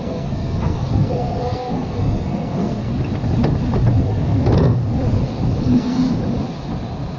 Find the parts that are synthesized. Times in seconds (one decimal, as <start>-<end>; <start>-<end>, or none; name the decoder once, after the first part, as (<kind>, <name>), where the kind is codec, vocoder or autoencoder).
0.0-2.9 (codec, SNAC); 4.0-4.8; 5.6-6.0